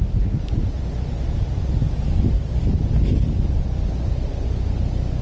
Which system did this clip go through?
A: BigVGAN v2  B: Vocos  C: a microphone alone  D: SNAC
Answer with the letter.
C